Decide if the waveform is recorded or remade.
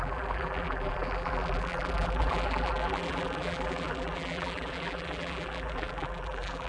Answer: remade